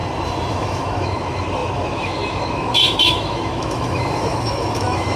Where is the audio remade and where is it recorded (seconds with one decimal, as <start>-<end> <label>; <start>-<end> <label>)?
0.0-0.5 recorded; 0.5-5.2 remade